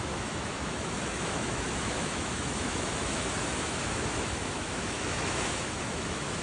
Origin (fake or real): fake